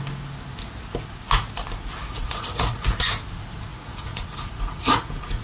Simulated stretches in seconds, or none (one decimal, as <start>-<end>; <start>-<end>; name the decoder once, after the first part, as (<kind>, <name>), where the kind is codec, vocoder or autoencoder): 2.0-2.9 (vocoder, Vocos); 3.7-5.4